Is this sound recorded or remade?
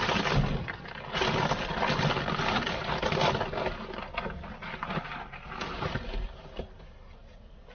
recorded